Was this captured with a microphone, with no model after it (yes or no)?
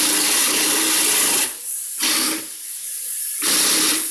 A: yes